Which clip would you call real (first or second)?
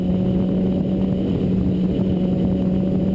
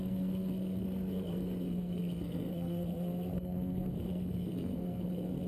first